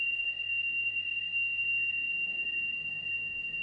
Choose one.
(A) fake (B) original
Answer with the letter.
A